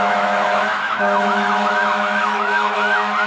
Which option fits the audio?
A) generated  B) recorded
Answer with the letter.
A